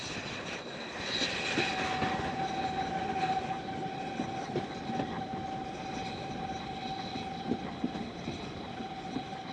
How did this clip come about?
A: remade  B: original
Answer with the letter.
B